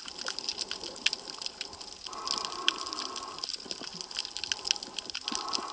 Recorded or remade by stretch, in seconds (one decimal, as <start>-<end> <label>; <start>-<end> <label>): 0.0-5.7 recorded